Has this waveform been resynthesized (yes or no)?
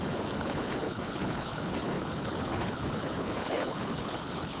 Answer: yes